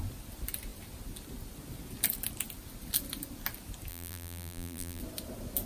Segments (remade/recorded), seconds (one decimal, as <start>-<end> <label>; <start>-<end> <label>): 0.0-3.9 recorded; 3.9-5.0 remade; 5.0-5.7 recorded